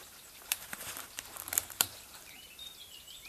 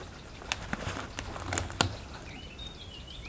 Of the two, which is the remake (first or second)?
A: first